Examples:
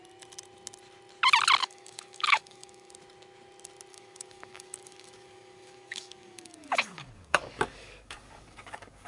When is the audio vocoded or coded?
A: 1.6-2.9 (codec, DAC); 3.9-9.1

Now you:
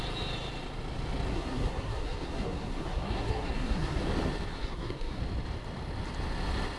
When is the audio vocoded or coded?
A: 1.3-4.0 (codec, SNAC); 4.5-5.2

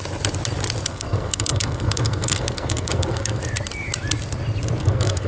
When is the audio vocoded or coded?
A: 0.9-3.4 (codec, SNAC); 4.8-5.3

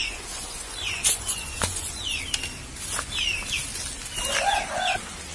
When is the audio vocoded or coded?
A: 0.0-2.2 (vocoder, Vocos)

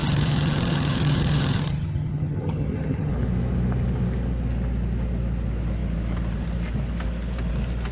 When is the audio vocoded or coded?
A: 0.0-3.1 (vocoder, HiFi-GAN)

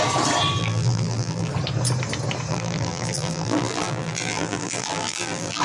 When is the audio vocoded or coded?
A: 0.6-1.5 (vocoder, BigVGAN v2); 2.5-5.6

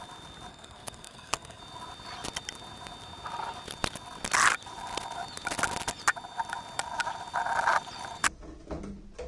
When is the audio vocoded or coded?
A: 0.5-1.6 (codec, SNAC)

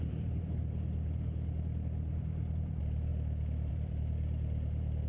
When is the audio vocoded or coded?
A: 0.0-0.6 (vocoder, BigVGAN v2); 2.2-3.1; 3.7-5.1